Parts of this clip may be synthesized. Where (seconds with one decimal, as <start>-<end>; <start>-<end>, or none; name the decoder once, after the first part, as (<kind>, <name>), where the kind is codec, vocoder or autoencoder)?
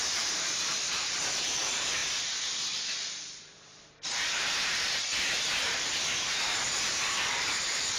0.0-2.0 (vocoder, BigVGAN v2); 3.2-8.0